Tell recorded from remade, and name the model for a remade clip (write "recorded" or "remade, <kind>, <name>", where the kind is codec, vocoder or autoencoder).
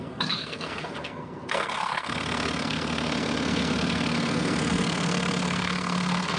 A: remade, codec, SNAC